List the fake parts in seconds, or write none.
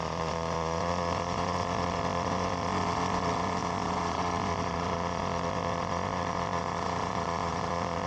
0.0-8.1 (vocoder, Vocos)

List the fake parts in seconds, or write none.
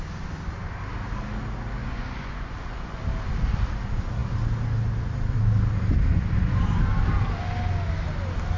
1.8-3.0 (vocoder, Vocos)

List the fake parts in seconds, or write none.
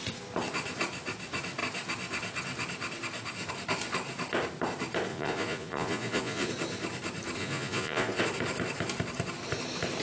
5.1-6.5 (vocoder, Vocos); 7.4-8.2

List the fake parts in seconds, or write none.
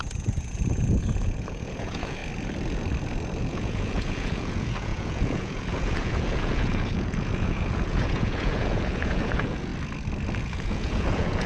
0.0-2.2 (vocoder, Vocos); 3.4-9.7; 10.4-11.5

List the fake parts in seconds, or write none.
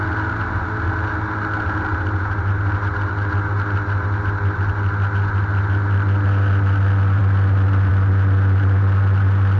none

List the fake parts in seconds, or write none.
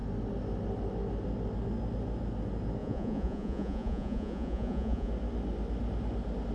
2.8-5.1 (vocoder, Vocos)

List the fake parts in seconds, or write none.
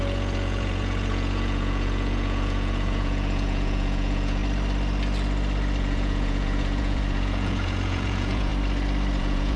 0.0-4.4 (vocoder, Vocos); 5.8-8.5; 9.2-9.6